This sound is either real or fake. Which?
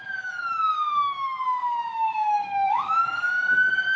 fake